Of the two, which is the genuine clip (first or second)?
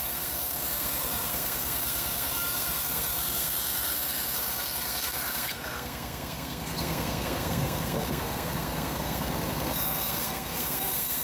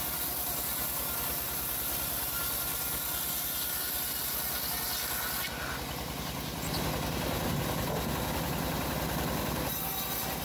second